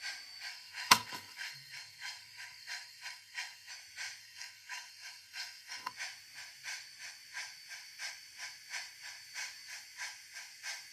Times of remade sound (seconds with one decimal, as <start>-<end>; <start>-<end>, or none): 0.5-3.7; 4.2-5.9